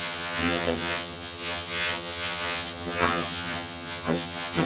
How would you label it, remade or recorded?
remade